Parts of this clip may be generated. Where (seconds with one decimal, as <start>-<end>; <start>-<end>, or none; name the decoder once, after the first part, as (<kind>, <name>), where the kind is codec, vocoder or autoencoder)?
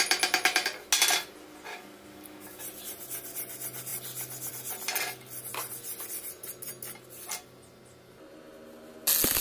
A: 1.7-2.6 (codec, DAC)